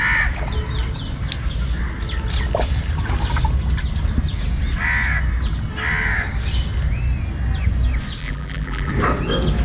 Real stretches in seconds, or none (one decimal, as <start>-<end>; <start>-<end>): 0.0-8.2; 8.9-9.6

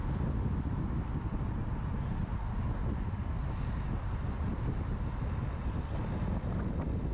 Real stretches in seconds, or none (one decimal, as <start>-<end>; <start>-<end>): 0.0-7.1